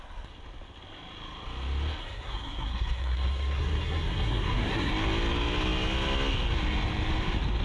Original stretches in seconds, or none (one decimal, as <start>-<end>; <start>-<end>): 0.0-2.0; 4.9-7.6